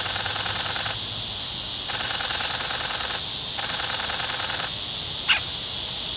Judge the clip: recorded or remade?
recorded